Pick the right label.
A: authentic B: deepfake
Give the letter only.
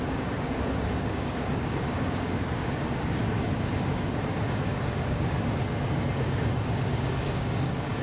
B